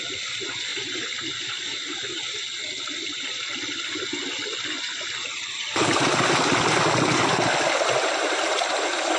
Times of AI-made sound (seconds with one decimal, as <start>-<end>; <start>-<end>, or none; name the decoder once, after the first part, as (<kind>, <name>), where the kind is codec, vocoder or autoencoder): none